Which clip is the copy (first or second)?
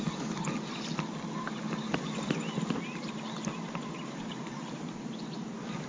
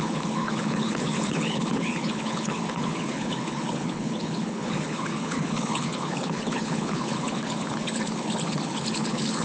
second